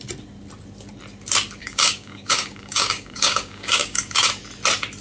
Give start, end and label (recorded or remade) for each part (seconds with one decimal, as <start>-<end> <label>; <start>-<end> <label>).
0.0-1.6 recorded; 1.6-4.3 remade; 4.3-5.0 recorded